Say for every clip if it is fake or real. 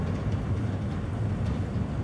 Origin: real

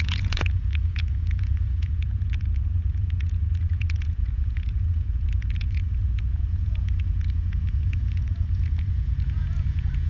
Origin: fake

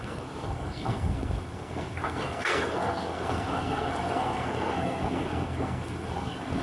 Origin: fake